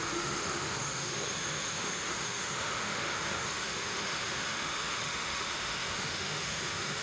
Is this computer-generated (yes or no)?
yes